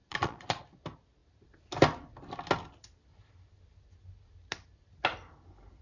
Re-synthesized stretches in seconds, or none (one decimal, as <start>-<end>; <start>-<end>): 0.0-0.6